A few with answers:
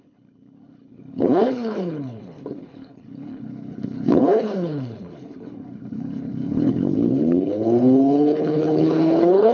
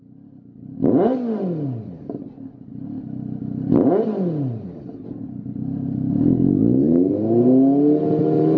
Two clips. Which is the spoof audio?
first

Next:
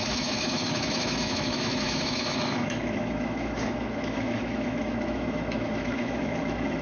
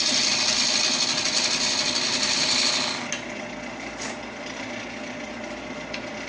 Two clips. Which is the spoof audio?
first